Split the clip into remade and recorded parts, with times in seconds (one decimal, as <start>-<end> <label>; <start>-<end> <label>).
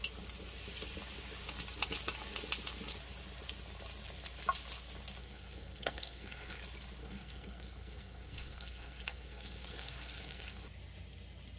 0.0-5.2 recorded; 5.2-6.6 remade; 6.6-7.0 recorded; 7.0-10.6 remade; 10.6-11.6 recorded